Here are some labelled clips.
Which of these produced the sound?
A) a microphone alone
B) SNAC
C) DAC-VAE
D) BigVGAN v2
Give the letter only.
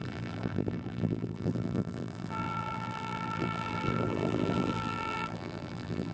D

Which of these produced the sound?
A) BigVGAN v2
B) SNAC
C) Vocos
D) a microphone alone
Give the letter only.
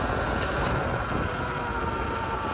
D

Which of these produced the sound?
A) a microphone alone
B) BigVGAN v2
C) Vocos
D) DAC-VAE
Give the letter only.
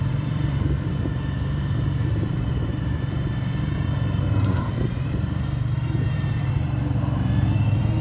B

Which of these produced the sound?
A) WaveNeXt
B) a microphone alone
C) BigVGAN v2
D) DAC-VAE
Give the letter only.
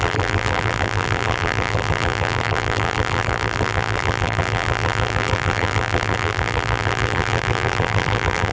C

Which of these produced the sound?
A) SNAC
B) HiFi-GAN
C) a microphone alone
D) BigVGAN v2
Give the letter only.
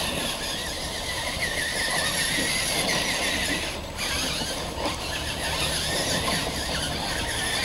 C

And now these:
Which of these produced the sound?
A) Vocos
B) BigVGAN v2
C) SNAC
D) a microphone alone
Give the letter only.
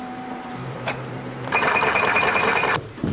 B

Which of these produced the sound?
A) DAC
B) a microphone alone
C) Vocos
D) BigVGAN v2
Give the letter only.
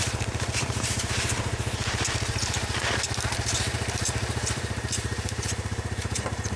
D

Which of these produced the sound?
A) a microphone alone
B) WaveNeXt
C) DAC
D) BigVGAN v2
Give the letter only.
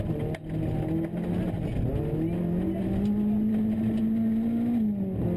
A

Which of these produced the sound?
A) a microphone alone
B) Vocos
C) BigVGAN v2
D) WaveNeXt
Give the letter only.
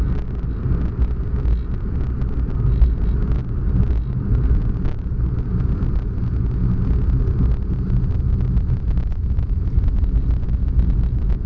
A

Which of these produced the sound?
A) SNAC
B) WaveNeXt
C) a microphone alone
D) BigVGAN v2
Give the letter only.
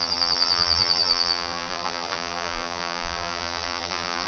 D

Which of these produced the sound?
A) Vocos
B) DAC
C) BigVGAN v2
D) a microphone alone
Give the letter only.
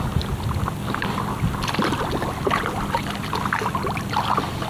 D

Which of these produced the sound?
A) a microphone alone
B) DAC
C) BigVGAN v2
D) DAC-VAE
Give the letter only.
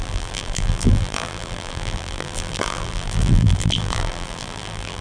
C